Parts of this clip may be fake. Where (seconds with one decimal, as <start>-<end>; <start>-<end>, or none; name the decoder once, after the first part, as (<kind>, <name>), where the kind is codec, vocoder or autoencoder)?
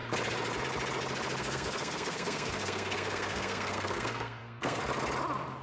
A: 1.4-4.8 (codec, SNAC)